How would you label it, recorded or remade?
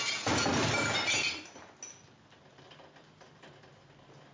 recorded